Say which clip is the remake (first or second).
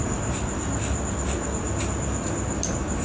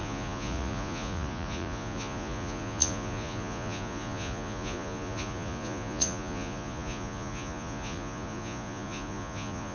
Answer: second